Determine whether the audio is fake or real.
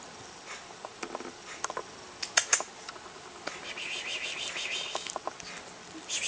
real